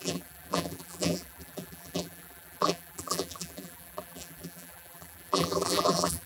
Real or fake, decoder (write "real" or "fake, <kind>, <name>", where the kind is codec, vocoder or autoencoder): fake, vocoder, BigVGAN v2